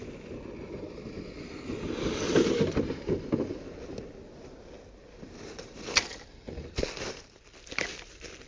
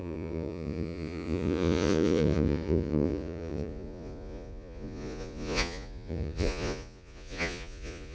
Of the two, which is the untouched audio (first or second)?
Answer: first